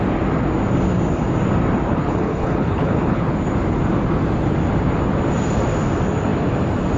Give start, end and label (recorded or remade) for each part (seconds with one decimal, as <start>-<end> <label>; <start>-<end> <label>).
0.0-1.9 recorded; 1.9-3.5 remade; 3.5-7.0 recorded